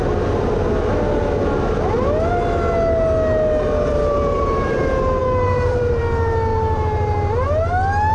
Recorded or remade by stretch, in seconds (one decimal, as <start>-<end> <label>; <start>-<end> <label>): 0.0-3.9 recorded; 3.9-4.8 remade; 4.8-5.2 recorded; 5.2-6.0 remade; 6.0-6.5 recorded; 6.5-7.3 remade; 7.3-8.1 recorded